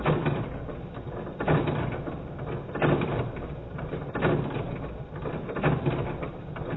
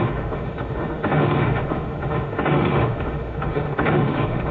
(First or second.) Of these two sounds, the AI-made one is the second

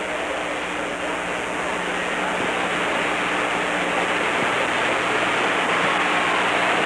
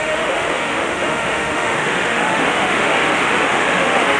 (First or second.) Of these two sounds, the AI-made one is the second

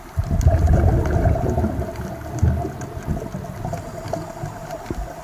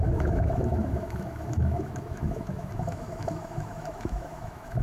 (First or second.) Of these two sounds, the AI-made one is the second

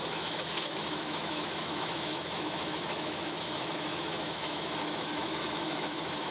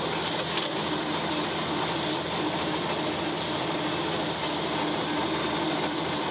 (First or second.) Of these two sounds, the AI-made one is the first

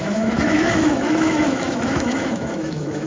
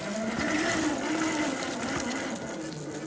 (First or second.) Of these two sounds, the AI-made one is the first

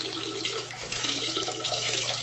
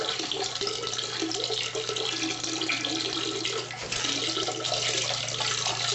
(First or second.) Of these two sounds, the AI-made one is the first